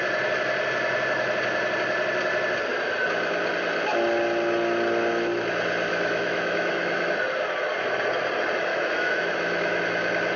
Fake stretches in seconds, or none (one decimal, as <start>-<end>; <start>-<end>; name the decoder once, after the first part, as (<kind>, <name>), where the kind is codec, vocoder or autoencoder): 5.9-7.1 (autoencoder, DAC-VAE); 8.7-9.8